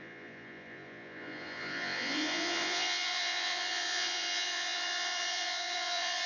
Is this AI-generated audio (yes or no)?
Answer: yes